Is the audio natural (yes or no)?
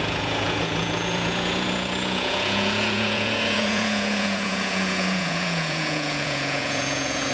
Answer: no